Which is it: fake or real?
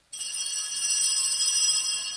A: real